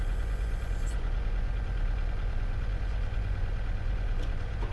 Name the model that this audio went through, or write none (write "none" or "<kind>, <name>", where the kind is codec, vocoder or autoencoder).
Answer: vocoder, Vocos